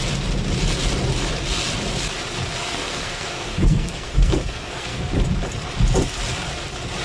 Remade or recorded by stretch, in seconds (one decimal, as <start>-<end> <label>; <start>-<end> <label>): 0.0-2.6 recorded; 2.6-5.1 remade; 5.1-7.0 recorded